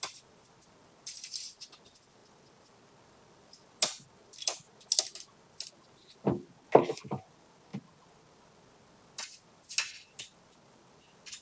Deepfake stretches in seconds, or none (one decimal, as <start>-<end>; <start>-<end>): none